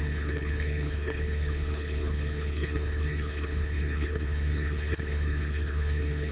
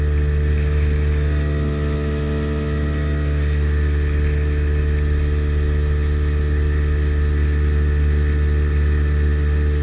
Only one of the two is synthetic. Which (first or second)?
first